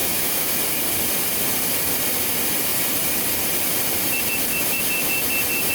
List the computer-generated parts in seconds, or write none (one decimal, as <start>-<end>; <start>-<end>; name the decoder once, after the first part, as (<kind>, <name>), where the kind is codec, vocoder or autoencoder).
0.0-0.6 (autoencoder, DAC-VAE)